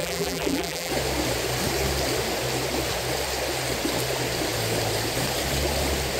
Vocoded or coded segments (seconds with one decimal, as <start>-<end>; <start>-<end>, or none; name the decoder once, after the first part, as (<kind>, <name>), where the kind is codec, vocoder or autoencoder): 0.0-0.9 (vocoder, BigVGAN v2)